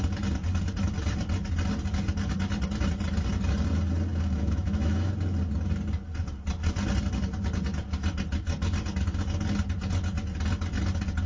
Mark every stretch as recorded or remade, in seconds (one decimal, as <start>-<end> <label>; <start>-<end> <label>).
0.0-4.1 recorded; 4.1-5.1 remade; 5.1-11.3 recorded

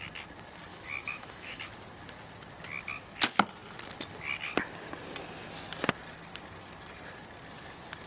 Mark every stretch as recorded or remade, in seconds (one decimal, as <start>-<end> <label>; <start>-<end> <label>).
0.0-0.7 recorded; 0.7-1.6 remade; 1.6-8.1 recorded

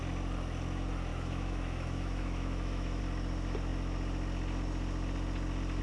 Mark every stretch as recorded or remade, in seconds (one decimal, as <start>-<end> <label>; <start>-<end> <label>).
0.0-1.1 recorded; 1.1-3.0 remade; 3.0-5.8 recorded

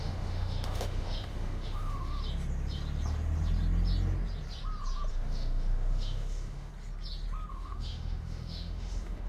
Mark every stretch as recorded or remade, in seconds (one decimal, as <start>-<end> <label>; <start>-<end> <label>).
0.0-2.2 remade; 2.2-5.1 recorded; 5.1-6.7 remade; 6.7-7.5 recorded; 7.5-9.3 remade

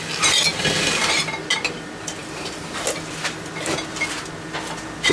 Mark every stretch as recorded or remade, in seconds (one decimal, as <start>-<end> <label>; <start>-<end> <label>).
0.0-5.1 recorded

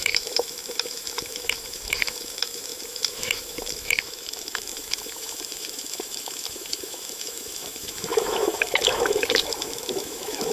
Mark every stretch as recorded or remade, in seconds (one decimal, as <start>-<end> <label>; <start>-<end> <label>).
0.0-10.5 remade